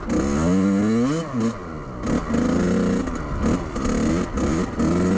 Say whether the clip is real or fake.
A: real